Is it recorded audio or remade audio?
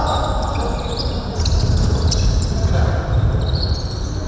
recorded